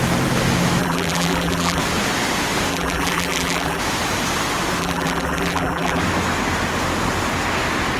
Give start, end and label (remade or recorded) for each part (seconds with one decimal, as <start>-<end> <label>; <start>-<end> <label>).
0.0-0.8 recorded; 0.8-1.8 remade; 1.8-2.7 recorded; 2.7-3.8 remade; 3.8-4.8 recorded; 4.8-6.0 remade; 6.0-8.0 recorded